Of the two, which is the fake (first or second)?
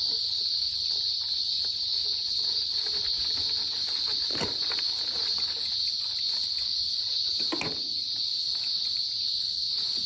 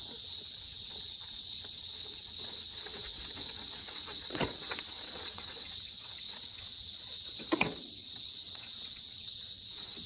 second